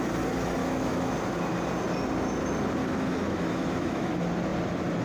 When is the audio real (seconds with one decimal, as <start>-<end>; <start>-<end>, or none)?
0.0-0.6; 1.1-2.8; 4.1-5.0